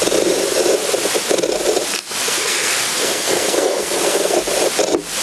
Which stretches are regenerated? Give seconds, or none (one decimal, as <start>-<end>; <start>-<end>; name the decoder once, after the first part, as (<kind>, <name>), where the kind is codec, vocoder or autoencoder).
1.9-4.4 (codec, SNAC)